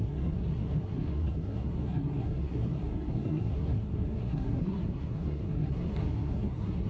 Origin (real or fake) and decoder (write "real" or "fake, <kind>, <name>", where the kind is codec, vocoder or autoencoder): fake, codec, SNAC